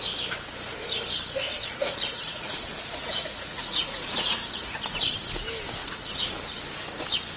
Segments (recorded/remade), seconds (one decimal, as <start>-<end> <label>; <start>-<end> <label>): 0.0-1.6 recorded; 1.6-5.0 remade; 5.0-5.8 recorded; 5.8-6.3 remade; 6.3-7.4 recorded